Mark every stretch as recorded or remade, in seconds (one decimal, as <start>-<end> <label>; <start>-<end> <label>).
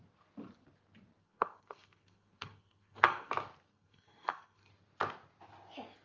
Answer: 0.0-1.2 recorded; 1.2-3.3 remade; 3.3-3.7 recorded; 3.7-4.7 remade; 4.7-6.0 recorded